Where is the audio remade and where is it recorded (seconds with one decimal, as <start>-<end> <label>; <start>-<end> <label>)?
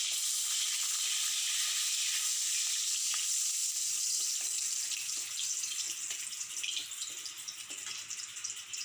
0.0-8.8 recorded